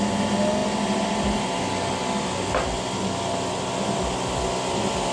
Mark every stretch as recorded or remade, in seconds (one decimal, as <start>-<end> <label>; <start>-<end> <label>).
0.0-5.1 recorded